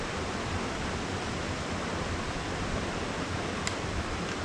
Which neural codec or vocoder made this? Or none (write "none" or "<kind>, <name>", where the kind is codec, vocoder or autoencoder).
none